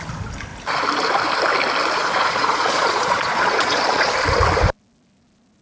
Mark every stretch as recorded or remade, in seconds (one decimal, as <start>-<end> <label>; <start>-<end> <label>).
0.0-2.0 recorded; 2.0-4.1 remade; 4.1-5.6 recorded